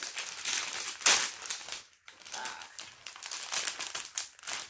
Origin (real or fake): real